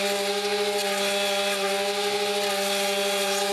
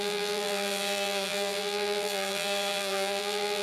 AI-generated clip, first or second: second